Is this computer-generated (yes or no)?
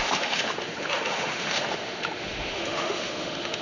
yes